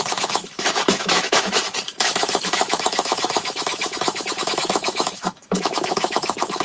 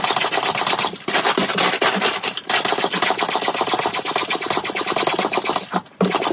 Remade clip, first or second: first